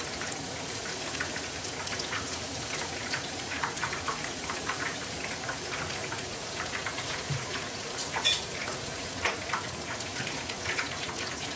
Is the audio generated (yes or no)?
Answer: yes